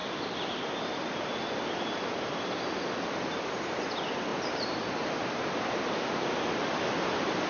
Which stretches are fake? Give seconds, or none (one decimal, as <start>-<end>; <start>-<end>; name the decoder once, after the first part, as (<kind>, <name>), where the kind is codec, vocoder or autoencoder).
none